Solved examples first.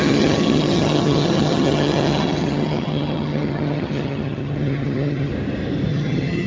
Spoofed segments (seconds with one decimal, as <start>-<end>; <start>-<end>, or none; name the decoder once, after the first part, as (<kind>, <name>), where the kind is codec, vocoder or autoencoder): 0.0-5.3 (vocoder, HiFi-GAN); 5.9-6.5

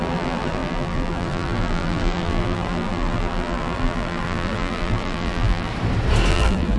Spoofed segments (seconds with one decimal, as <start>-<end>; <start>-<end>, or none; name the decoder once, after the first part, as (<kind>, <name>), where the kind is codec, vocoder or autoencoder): 0.0-5.7 (vocoder, BigVGAN v2); 6.3-6.8

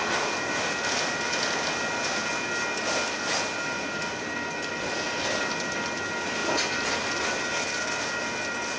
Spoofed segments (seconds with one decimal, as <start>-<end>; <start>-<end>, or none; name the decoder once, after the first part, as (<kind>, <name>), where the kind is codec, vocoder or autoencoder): none